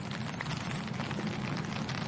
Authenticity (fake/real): real